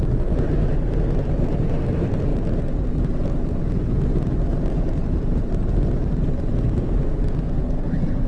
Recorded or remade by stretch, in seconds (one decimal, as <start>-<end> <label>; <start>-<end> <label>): 0.0-2.3 recorded; 2.3-2.9 remade; 2.9-4.5 recorded; 4.5-5.7 remade; 5.7-8.3 recorded